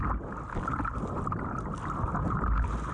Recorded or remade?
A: recorded